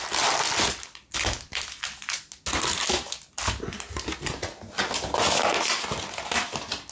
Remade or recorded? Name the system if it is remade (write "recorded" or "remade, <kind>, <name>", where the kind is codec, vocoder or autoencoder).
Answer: recorded